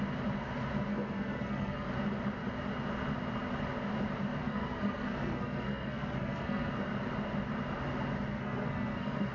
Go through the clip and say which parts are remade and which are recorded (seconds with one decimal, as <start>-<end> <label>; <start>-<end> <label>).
0.0-0.9 recorded; 0.9-1.9 remade; 1.9-4.4 recorded; 4.4-6.7 remade; 6.7-8.3 recorded; 8.3-9.3 remade